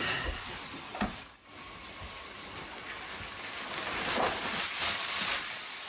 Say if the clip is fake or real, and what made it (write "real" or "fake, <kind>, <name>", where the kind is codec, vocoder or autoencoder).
real